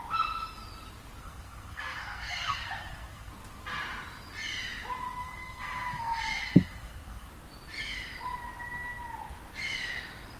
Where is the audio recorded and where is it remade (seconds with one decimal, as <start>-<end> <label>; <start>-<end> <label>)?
0.0-1.2 recorded; 1.2-3.3 remade; 3.3-5.2 recorded; 5.2-7.3 remade; 7.3-10.4 recorded